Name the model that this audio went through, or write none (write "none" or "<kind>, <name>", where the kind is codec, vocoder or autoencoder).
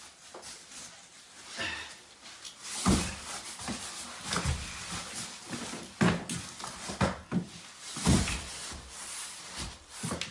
none